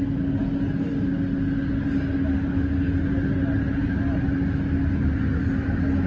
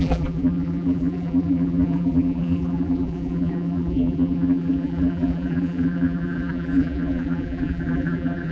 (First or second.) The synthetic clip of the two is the second